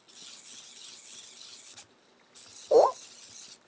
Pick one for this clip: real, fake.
real